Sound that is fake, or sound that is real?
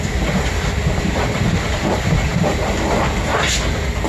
real